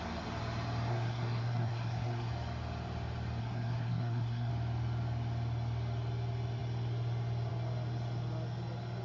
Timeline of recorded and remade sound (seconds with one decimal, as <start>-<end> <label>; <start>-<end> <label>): 0.0-0.9 recorded; 0.9-2.3 remade; 2.3-3.4 recorded; 3.4-4.5 remade; 4.5-9.0 recorded